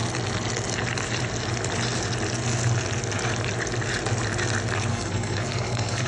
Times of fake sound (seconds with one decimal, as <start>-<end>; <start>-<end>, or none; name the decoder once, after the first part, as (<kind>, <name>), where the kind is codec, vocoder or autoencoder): 4.9-6.1 (codec, SNAC)

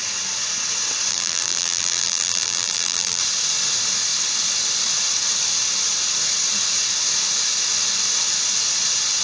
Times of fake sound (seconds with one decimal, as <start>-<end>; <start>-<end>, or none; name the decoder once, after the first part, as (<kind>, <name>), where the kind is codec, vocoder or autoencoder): 1.1-3.2 (vocoder, BigVGAN v2)